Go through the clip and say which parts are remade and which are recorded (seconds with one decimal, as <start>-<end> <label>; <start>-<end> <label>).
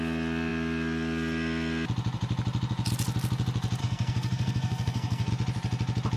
0.0-3.8 recorded; 3.8-5.3 remade; 5.3-6.2 recorded